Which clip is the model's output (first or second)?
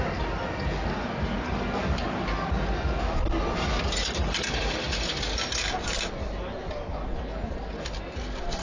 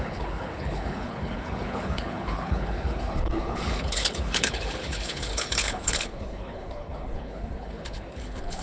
second